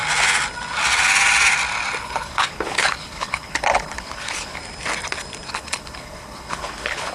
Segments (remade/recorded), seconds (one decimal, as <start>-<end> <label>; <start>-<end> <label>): 0.0-2.0 recorded; 2.0-4.6 remade; 4.6-5.5 recorded; 5.5-7.1 remade